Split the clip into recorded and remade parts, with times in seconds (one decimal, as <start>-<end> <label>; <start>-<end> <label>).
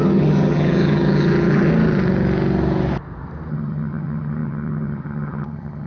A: 0.0-1.7 remade; 1.7-3.5 recorded; 3.5-5.9 remade